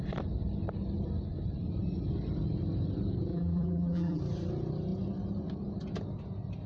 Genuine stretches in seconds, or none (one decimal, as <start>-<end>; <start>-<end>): 0.0-3.3; 4.2-6.7